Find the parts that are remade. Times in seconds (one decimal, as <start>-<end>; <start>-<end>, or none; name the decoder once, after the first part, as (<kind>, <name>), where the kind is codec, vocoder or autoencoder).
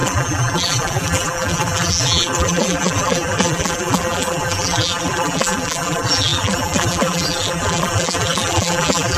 0.0-9.2 (vocoder, BigVGAN v2)